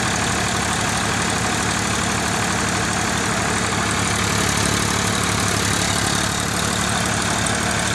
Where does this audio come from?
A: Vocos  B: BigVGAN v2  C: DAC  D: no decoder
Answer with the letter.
D